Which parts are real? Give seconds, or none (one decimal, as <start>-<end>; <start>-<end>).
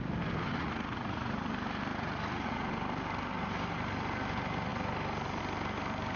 0.0-0.6; 1.4-1.9; 2.7-6.2